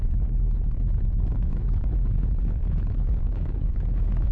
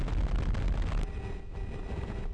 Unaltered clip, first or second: second